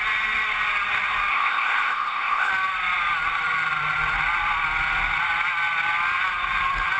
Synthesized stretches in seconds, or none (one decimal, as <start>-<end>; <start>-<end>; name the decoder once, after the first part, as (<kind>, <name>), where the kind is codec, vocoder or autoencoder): 1.3-2.5 (codec, ZipCodec)